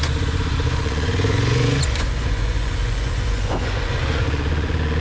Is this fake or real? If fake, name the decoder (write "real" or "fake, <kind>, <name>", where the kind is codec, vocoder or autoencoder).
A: fake, vocoder, Vocos